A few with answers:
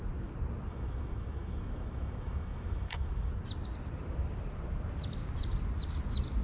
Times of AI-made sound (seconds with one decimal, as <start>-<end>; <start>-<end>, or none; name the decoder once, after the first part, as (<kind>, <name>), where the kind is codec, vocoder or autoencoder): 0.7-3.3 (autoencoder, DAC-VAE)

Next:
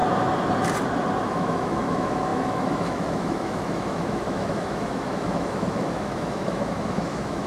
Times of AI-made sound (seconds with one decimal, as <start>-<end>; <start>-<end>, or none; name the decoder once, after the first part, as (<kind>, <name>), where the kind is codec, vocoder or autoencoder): 1.2-7.5 (autoencoder, DAC-VAE)

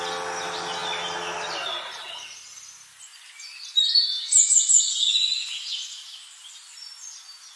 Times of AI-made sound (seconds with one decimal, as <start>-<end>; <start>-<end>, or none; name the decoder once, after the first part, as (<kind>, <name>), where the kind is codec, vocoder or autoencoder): none